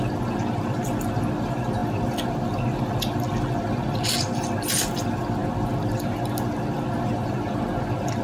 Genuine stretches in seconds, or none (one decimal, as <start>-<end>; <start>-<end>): 0.0-8.2